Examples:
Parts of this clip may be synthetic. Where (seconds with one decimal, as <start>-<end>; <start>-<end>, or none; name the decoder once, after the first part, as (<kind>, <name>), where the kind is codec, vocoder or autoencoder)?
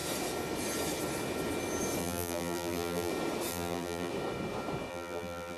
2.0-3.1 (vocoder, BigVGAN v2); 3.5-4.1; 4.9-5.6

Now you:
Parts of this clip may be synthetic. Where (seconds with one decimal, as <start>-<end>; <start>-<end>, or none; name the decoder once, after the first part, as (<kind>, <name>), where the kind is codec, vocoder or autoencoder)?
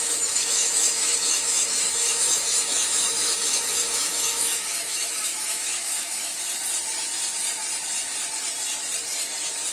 0.0-6.3 (autoencoder, DAC-VAE)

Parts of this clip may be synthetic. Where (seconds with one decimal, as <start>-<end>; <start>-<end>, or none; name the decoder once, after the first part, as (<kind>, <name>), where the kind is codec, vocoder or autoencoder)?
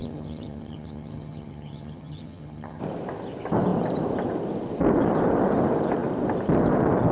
0.0-2.8 (vocoder, HiFi-GAN)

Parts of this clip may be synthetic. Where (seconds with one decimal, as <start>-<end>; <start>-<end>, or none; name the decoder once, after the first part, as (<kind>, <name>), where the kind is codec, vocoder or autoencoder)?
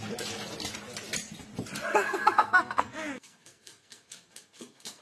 1.9-5.0 (codec, SNAC)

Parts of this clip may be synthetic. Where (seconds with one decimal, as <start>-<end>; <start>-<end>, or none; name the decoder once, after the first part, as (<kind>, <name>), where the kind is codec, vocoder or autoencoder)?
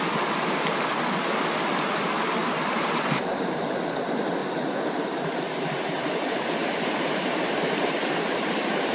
2.4-3.8 (vocoder, BigVGAN v2); 4.4-8.9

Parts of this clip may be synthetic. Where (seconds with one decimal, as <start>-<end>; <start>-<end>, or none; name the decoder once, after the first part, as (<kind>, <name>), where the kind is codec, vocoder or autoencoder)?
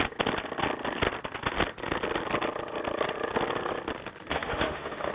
4.3-5.1 (autoencoder, DAC-VAE)